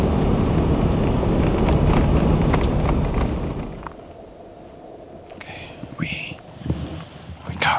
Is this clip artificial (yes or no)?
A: no